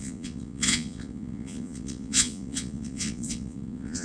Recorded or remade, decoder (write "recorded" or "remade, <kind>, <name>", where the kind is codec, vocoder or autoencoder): remade, vocoder, Vocos